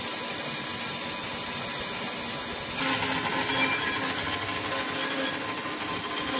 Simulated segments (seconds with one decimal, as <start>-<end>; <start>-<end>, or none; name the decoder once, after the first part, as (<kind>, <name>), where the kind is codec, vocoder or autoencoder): none